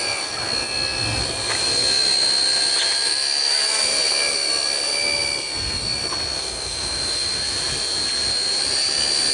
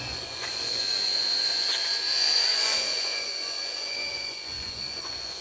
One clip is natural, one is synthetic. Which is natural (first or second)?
first